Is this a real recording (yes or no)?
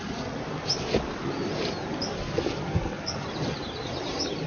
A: yes